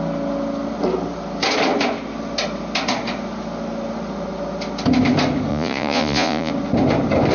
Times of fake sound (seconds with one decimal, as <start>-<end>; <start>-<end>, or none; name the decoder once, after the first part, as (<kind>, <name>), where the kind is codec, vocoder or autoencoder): 5.5-6.5 (vocoder, Vocos)